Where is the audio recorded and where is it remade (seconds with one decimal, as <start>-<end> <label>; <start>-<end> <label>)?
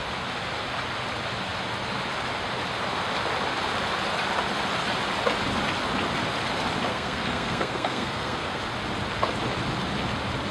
0.0-6.9 recorded; 6.9-8.6 remade; 8.6-10.5 recorded